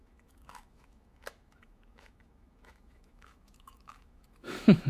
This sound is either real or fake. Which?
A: fake